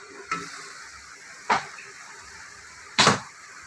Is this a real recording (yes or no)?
no